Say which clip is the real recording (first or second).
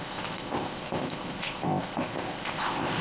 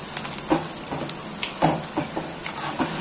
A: second